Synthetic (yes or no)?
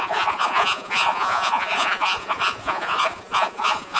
yes